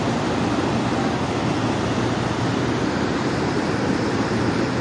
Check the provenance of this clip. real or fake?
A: real